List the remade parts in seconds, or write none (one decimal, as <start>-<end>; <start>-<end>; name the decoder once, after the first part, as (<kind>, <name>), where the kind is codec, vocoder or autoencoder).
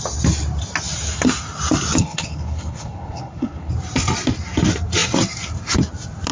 2.0-3.7 (codec, HILCodec)